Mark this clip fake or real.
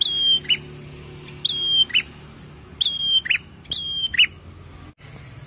real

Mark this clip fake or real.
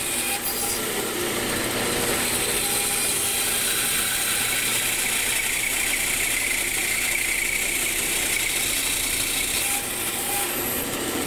real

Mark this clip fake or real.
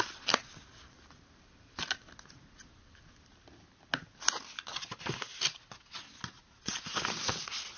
real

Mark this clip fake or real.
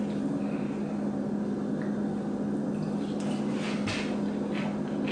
real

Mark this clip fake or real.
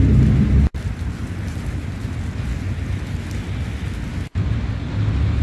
real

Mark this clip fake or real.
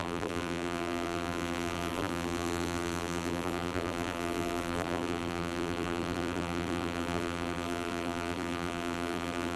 fake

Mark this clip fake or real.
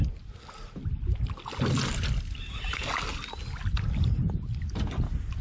real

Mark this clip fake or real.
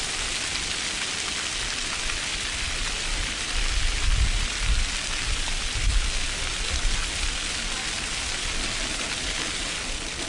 real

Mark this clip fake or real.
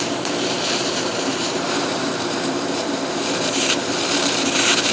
fake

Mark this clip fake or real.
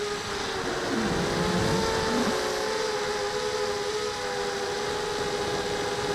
real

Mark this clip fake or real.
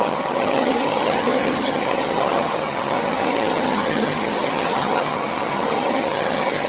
fake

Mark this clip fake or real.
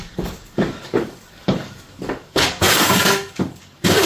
fake